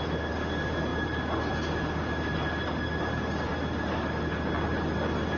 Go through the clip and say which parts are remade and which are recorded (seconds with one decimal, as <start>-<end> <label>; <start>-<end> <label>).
0.0-5.4 recorded